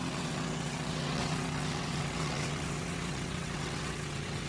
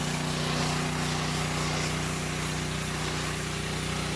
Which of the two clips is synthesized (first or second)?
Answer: first